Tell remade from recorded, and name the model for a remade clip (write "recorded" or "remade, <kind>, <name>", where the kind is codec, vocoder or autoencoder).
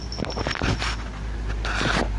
recorded